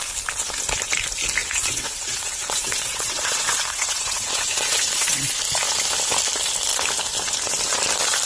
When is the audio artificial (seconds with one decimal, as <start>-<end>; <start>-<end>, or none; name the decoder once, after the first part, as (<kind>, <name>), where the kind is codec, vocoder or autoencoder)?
1.4-5.4 (vocoder, WaveNeXt)